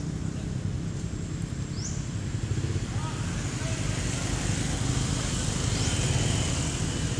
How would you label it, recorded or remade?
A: recorded